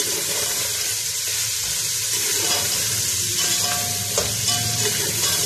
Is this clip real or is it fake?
real